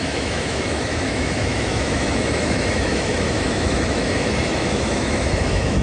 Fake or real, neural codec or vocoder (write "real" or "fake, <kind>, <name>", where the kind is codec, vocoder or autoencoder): fake, autoencoder, DAC-VAE